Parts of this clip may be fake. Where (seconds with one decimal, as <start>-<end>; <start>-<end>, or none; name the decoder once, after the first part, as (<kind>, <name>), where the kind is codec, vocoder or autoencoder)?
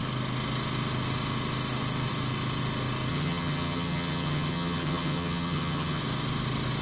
3.1-6.0 (vocoder, HiFi-GAN)